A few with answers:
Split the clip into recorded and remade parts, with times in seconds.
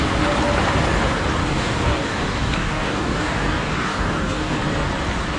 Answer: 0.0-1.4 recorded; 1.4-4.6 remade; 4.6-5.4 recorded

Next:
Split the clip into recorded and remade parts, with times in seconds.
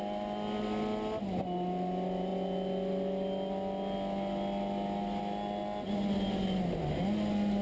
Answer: 0.0-7.6 recorded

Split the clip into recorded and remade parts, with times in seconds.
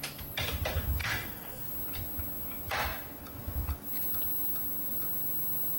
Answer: 0.0-1.0 recorded; 1.0-1.7 remade; 1.7-5.8 recorded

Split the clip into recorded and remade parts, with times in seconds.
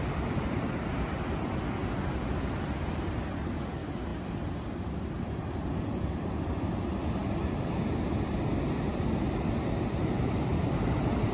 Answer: 0.0-11.3 recorded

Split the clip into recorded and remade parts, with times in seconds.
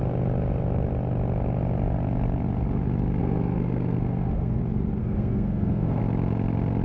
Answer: 0.0-3.2 recorded; 3.2-4.6 remade; 4.6-5.0 recorded; 5.0-6.0 remade; 6.0-6.8 recorded